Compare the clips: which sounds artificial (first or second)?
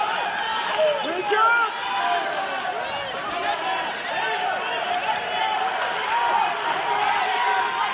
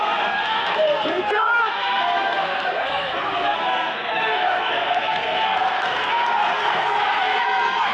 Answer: second